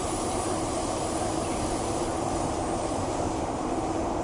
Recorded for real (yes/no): no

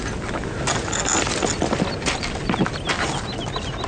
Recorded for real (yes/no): yes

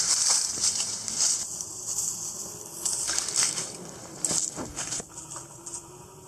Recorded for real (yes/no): no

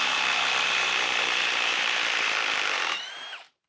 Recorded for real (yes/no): no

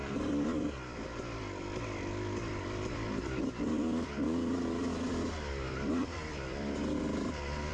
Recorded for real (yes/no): no